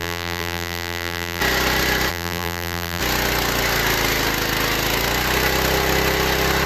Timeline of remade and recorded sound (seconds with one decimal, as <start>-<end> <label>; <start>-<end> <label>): 0.0-1.4 remade; 1.4-2.1 recorded; 2.1-3.0 remade; 3.0-6.7 recorded